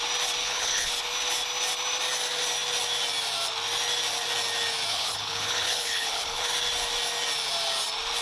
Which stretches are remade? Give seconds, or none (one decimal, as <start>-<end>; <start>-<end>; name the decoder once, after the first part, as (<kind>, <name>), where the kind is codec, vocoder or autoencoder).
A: 0.4-0.9 (codec, HILCodec); 4.9-6.5